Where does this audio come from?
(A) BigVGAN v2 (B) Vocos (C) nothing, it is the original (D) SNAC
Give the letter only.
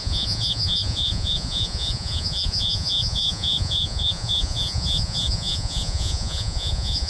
B